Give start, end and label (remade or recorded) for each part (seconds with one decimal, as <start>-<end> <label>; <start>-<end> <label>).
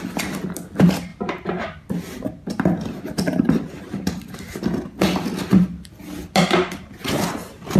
0.0-7.8 recorded